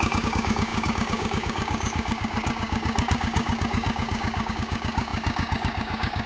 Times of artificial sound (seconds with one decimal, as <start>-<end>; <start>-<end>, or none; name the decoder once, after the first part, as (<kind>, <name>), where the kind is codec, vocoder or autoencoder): 0.0-6.3 (codec, DAC)